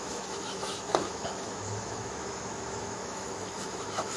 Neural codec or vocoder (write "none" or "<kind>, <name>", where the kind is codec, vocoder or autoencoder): autoencoder, DAC-VAE